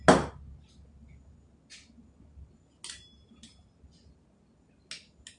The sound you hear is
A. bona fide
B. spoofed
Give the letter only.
A